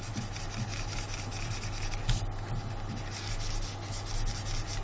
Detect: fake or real real